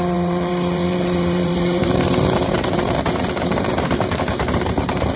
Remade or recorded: remade